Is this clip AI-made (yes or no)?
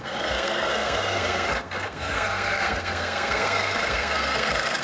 yes